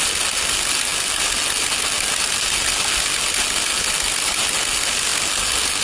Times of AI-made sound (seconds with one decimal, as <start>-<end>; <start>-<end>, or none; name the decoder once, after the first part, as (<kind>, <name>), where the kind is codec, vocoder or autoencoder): none